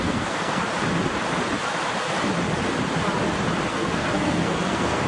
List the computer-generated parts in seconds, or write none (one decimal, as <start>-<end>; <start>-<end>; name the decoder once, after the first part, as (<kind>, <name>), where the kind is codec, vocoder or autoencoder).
0.0-0.6 (codec, SNAC); 3.7-5.1